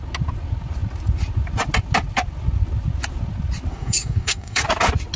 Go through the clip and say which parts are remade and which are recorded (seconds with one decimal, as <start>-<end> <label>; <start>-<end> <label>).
0.0-3.7 recorded; 3.7-4.6 remade; 4.6-5.2 recorded